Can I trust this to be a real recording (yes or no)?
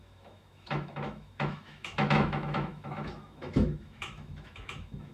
no